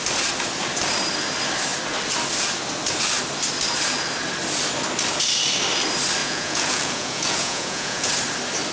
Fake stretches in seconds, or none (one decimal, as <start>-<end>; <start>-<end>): 6.2-8.1